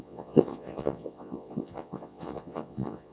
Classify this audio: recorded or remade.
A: remade